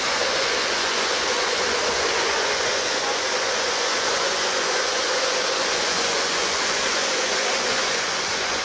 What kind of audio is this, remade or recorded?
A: remade